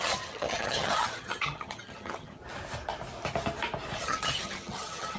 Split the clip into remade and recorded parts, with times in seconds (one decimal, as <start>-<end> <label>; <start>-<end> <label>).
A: 0.0-2.4 remade; 2.4-4.0 recorded; 4.0-5.2 remade